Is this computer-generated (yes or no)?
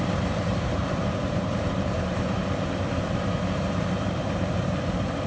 yes